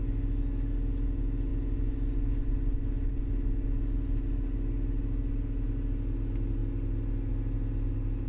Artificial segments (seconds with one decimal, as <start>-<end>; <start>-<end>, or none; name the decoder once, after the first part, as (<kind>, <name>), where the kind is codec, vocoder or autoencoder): none